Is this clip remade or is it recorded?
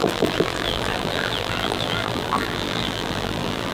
remade